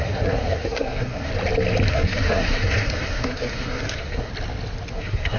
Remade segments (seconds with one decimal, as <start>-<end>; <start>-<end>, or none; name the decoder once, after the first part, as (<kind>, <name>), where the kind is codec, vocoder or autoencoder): 0.0-1.3 (codec, SNAC); 1.9-4.3; 4.9-5.4